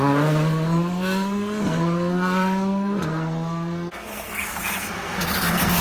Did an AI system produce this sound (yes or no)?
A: yes